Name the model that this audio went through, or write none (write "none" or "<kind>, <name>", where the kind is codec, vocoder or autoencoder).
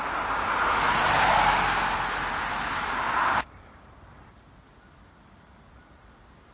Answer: none